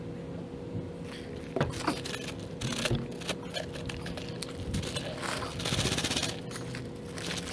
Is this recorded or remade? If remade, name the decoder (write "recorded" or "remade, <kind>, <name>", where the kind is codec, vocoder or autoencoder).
recorded